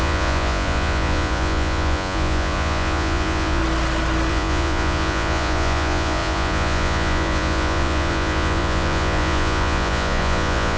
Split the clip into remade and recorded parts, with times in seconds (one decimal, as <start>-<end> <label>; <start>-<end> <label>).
0.0-3.6 remade; 3.6-4.3 recorded; 4.3-10.8 remade